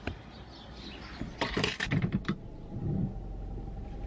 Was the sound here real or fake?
real